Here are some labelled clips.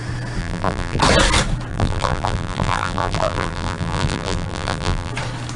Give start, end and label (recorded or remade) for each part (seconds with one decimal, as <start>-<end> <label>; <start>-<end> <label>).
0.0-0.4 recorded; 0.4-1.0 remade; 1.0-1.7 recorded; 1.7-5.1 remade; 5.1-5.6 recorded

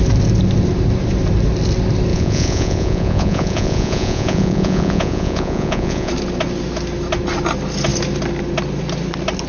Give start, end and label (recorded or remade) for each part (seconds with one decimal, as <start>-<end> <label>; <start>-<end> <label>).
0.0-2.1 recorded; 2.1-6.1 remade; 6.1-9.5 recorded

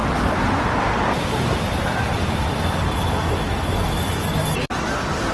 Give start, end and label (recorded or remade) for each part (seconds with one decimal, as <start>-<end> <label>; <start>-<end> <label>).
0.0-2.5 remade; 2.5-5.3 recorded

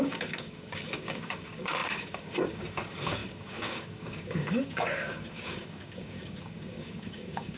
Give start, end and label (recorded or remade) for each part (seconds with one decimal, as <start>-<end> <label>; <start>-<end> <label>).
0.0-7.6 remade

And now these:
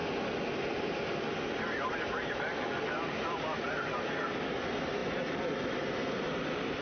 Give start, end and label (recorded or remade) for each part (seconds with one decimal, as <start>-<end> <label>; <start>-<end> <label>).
0.0-6.8 recorded

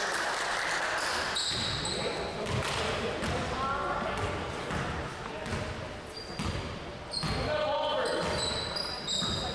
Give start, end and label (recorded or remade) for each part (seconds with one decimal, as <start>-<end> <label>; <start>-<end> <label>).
0.0-9.5 recorded